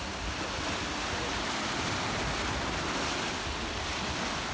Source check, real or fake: real